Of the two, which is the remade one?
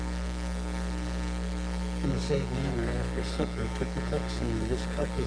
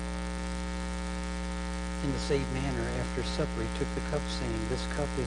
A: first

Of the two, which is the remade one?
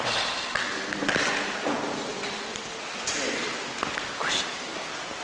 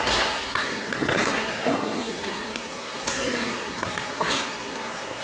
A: second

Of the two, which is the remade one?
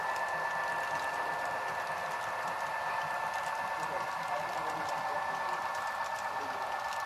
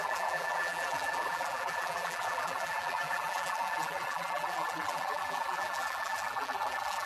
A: second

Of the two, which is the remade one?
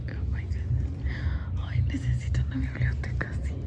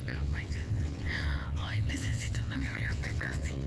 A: second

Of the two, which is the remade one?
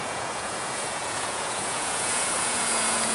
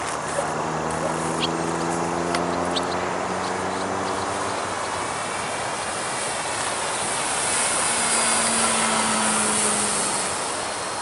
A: first